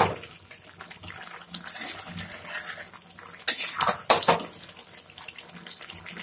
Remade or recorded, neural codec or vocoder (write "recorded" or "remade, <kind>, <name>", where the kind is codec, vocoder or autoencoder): recorded